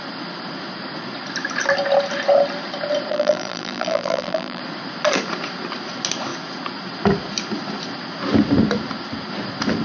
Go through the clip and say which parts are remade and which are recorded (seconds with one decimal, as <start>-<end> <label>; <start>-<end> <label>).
0.0-3.1 recorded; 3.1-4.6 remade; 4.6-9.8 recorded